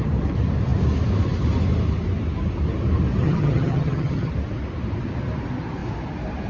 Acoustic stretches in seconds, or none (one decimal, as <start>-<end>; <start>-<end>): 0.0-3.2; 4.3-6.5